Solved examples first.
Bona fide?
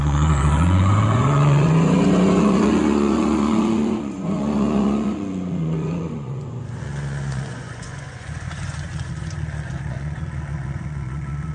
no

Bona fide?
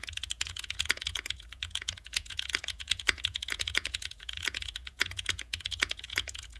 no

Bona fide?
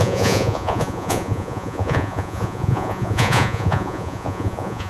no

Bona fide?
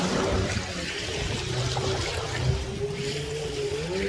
yes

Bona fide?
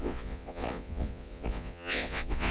no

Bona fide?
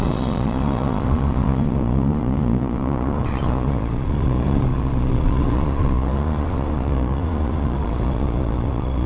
no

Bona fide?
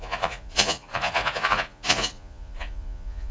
no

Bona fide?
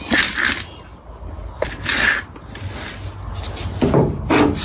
yes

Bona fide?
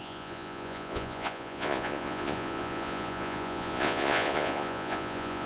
no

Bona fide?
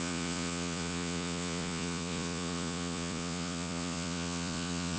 no